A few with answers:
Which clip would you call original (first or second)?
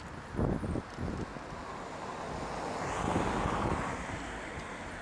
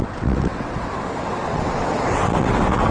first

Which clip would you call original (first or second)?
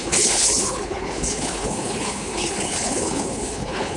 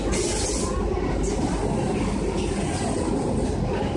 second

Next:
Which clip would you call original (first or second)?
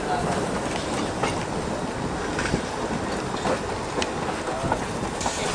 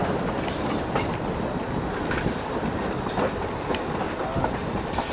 first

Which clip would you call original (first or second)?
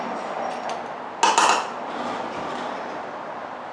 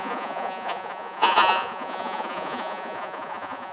first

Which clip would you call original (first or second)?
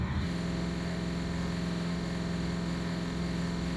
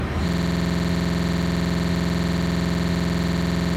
second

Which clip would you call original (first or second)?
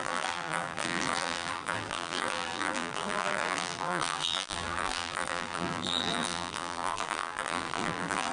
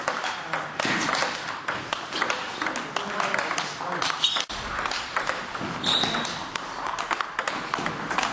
second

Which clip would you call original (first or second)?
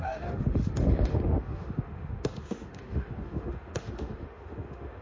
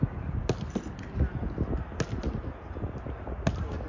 second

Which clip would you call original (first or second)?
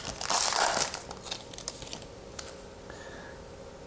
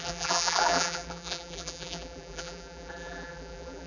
first